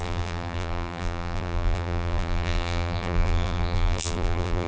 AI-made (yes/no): yes